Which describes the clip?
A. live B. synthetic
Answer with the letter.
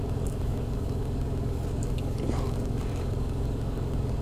B